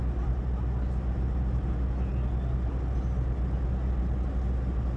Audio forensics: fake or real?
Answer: real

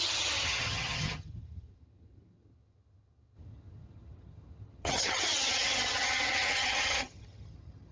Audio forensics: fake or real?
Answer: fake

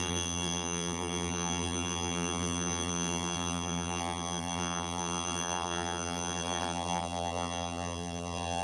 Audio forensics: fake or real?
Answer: fake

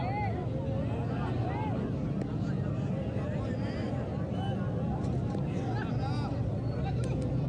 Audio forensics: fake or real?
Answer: real